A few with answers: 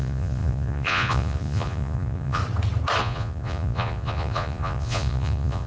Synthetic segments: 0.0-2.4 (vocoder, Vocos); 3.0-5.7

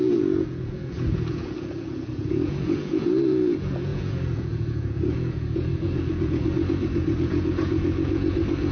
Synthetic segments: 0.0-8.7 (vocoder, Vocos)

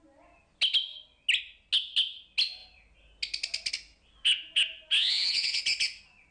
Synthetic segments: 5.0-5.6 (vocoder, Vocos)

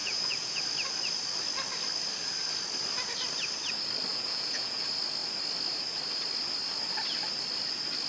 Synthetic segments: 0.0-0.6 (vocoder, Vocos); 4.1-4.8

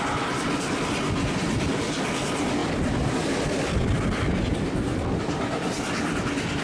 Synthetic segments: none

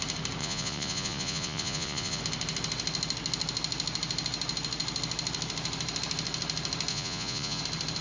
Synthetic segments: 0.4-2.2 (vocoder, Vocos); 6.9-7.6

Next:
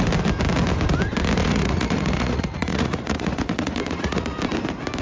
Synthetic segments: 1.4-4.4 (vocoder, Vocos)

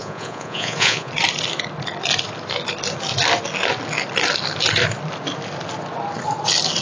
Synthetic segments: 0.0-1.1 (vocoder, Vocos)